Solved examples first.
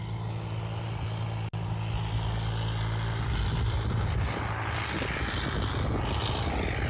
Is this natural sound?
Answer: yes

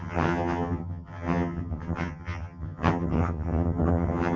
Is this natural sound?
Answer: no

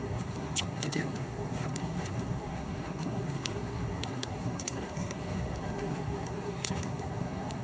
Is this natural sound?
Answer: no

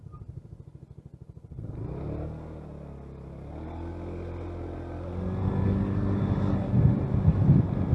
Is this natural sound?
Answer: yes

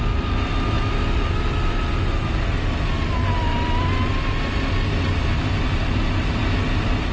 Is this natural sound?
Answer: yes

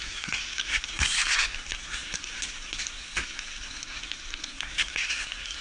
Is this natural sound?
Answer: no